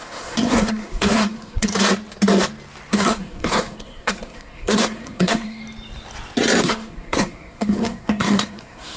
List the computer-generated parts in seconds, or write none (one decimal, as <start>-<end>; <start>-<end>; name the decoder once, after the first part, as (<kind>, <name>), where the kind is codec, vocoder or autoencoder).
0.0-1.7 (codec, SNAC); 2.9-5.6; 6.6-9.0